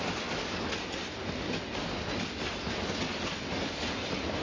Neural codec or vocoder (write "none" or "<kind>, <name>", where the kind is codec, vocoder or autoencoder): none